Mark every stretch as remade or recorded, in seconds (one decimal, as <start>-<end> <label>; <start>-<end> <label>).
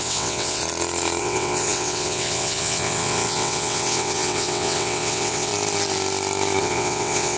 0.0-0.6 remade; 0.6-1.2 recorded; 1.2-5.5 remade; 5.5-6.6 recorded; 6.6-7.4 remade